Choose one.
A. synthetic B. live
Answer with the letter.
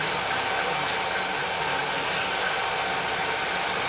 B